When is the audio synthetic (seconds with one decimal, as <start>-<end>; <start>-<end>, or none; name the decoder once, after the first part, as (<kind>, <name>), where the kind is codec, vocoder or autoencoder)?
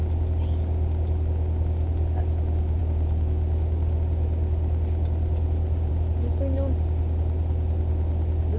none